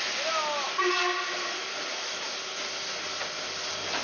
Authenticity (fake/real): real